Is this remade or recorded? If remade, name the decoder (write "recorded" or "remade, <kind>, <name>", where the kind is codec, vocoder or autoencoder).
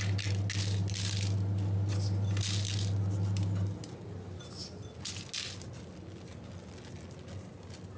recorded